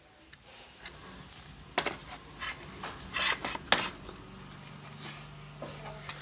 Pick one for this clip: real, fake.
real